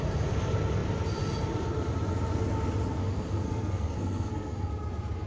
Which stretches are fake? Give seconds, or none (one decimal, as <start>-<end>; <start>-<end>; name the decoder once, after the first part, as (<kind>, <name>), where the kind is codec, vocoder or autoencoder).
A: 3.0-4.7 (codec, SNAC)